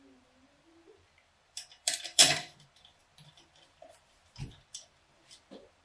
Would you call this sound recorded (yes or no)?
no